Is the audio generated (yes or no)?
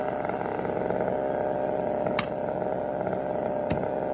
no